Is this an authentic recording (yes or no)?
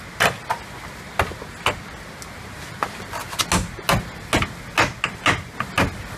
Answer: yes